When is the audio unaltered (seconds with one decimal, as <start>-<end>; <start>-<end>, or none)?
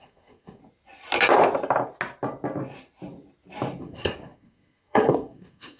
0.6-3.8